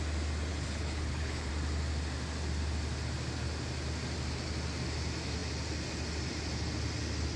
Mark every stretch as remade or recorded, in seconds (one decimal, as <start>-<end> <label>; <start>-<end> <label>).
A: 0.0-0.5 recorded; 0.5-1.5 remade; 1.5-7.4 recorded